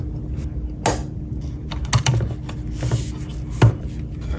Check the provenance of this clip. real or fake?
real